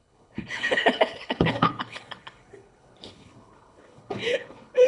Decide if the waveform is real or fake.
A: fake